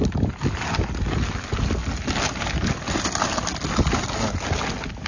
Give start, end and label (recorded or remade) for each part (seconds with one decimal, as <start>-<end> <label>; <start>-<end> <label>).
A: 0.0-5.1 recorded